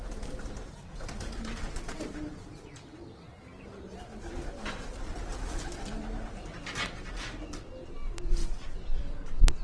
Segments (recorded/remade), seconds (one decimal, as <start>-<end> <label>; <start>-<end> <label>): 0.0-9.6 recorded